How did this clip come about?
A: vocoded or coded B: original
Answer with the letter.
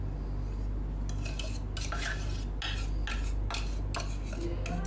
B